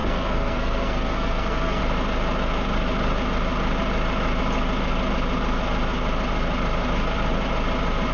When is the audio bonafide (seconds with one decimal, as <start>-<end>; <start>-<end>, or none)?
1.8-8.1